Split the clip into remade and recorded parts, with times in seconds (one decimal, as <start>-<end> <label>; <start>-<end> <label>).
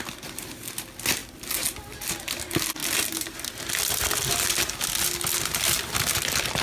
0.0-6.6 recorded